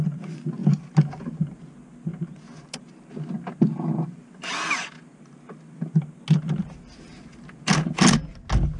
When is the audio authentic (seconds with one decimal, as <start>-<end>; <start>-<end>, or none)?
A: 0.0-8.8